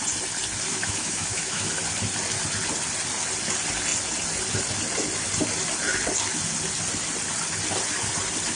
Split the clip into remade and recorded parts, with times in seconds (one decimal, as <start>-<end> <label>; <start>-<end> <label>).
0.0-0.7 recorded; 0.7-1.7 remade; 1.7-8.6 recorded